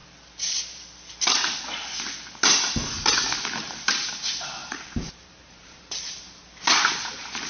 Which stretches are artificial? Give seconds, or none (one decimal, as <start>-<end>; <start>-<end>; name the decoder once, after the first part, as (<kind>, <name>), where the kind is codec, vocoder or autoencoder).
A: 4.6-6.2 (vocoder, BigVGAN v2)